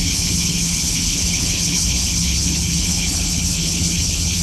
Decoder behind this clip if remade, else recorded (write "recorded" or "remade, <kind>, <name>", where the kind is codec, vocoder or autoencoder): remade, codec, HILCodec